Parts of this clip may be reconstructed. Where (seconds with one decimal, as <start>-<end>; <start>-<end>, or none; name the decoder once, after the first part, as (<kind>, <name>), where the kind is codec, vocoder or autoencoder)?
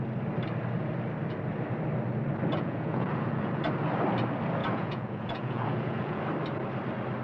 2.5-3.6 (vocoder, Vocos); 4.6-6.2